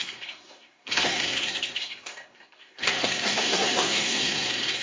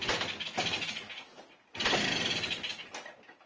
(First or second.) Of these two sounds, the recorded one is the second